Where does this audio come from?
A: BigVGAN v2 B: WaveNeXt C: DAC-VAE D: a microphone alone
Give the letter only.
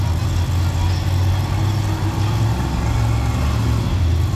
D